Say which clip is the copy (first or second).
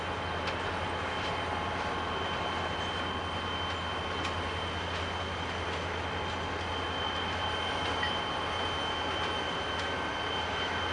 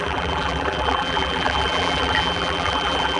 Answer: second